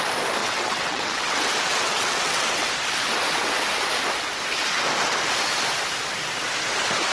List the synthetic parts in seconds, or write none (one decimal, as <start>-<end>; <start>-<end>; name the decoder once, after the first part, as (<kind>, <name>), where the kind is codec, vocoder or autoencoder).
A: 0.4-2.7 (vocoder, WaveNeXt)